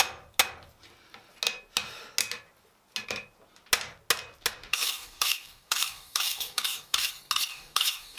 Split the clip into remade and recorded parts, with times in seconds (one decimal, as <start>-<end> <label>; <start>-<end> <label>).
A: 0.0-4.7 recorded; 4.7-7.1 remade; 7.1-7.5 recorded; 7.5-8.2 remade